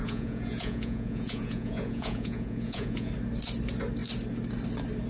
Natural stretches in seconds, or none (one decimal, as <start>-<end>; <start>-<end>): 3.1-5.1